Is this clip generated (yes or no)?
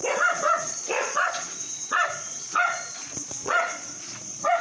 yes